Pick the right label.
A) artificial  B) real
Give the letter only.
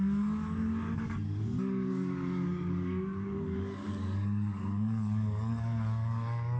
A